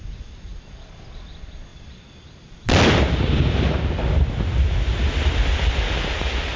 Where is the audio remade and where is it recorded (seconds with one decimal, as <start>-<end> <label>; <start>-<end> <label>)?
0.0-6.6 recorded